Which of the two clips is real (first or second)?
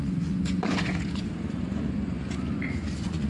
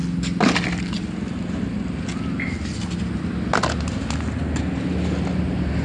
second